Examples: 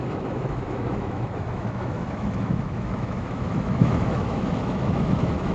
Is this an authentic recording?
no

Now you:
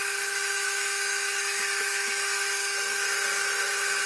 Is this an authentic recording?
no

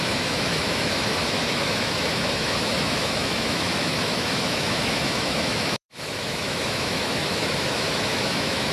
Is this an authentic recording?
no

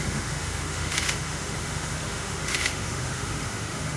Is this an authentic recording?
no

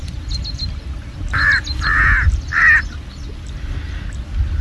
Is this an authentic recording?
yes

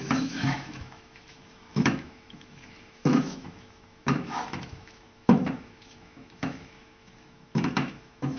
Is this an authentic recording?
no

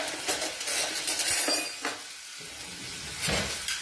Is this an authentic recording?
yes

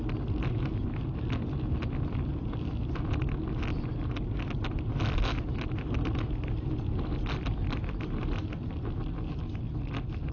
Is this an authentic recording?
yes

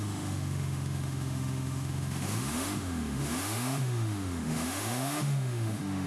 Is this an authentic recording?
no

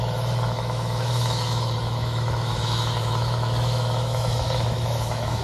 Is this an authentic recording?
no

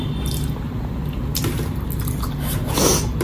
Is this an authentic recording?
yes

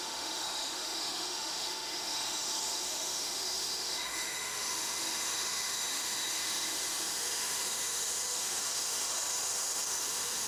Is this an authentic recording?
no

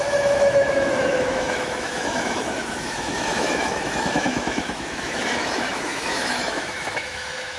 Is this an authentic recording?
no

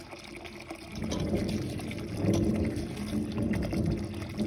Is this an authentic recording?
yes